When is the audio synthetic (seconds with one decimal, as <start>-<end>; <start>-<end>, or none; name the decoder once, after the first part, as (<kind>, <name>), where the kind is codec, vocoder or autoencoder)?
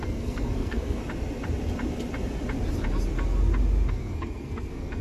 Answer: 0.0-1.0 (codec, SNAC); 3.9-5.0